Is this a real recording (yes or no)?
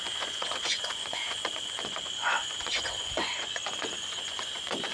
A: no